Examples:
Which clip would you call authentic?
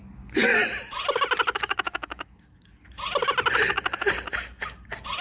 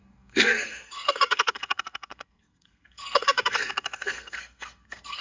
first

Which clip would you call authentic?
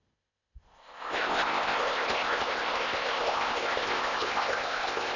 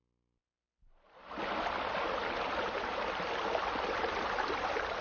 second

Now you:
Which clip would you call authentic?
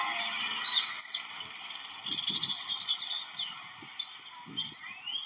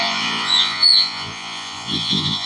first